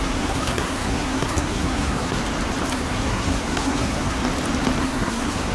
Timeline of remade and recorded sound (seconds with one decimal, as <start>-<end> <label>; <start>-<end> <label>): 0.0-2.2 remade; 2.2-2.7 recorded; 2.7-4.2 remade; 4.2-4.8 recorded; 4.8-5.5 remade